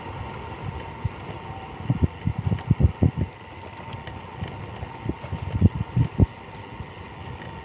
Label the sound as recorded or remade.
recorded